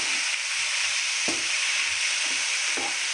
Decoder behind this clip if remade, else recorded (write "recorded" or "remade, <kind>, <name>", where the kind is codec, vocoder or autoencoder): recorded